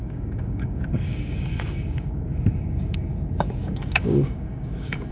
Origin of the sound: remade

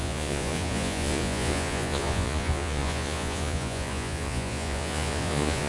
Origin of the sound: remade